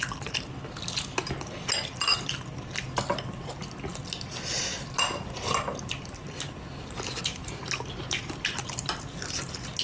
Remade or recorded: recorded